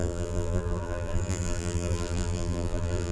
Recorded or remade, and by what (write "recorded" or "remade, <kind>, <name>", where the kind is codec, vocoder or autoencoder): remade, vocoder, BigVGAN v2